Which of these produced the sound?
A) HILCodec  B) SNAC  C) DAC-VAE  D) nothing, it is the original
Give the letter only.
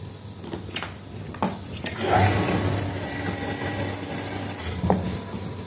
D